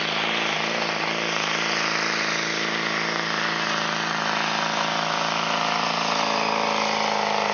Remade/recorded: recorded